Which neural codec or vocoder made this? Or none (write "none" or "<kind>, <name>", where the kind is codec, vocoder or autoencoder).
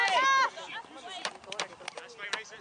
none